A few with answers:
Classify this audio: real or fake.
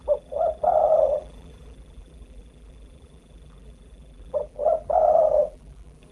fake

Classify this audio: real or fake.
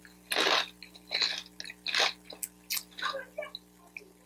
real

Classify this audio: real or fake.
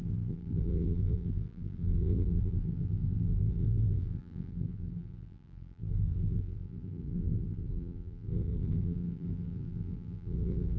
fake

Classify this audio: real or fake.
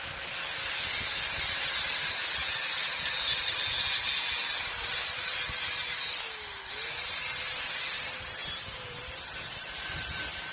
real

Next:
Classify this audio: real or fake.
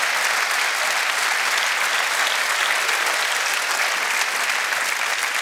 real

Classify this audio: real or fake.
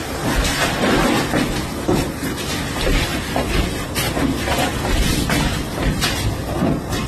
fake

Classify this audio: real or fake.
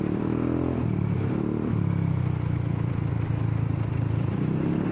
fake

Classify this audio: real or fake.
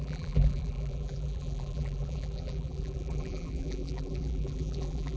fake